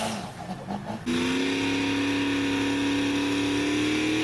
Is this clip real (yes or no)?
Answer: yes